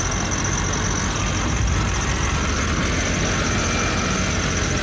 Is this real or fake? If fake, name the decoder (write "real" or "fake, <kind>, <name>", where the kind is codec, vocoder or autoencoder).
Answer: real